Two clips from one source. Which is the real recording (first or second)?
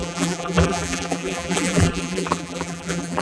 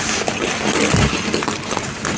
second